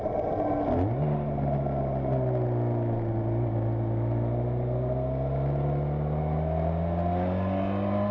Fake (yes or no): no